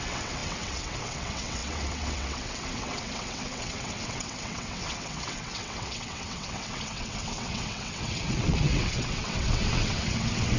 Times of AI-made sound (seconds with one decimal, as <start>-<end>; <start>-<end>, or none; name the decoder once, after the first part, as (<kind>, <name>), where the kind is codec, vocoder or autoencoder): 0.0-10.6 (vocoder, WaveNeXt)